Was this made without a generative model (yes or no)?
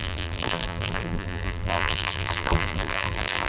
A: no